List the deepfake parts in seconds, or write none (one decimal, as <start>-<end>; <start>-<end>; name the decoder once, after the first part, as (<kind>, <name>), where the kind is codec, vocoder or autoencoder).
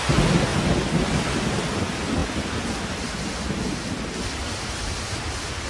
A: none